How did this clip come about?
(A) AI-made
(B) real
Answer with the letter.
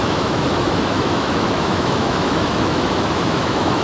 A